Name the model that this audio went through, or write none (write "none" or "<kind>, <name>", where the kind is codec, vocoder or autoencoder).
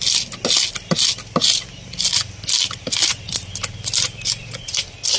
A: none